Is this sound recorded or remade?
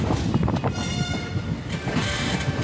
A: recorded